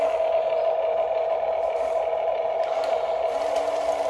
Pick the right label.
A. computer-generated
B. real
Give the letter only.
B